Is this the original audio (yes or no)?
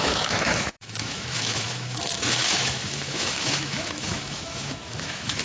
no